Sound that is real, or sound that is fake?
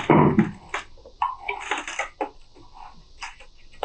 real